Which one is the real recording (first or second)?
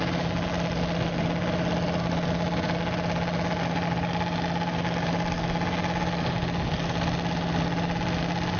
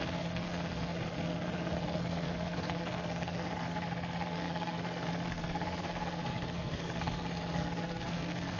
first